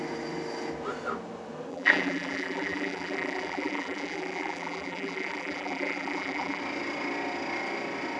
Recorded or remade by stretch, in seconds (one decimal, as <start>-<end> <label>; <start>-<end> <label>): 0.0-1.7 recorded; 1.7-6.6 remade; 6.6-8.2 recorded